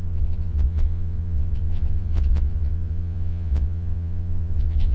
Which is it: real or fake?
fake